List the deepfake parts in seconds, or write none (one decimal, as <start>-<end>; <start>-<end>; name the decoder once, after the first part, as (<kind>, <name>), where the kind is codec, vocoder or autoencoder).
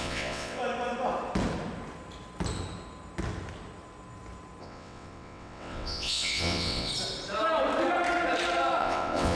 0.0-0.6 (vocoder, WaveNeXt); 4.6-6.9; 8.8-9.3